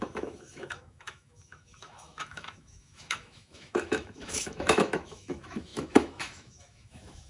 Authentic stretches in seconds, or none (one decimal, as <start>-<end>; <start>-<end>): none